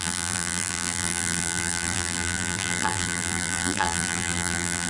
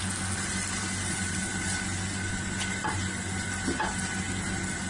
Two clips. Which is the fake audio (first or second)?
first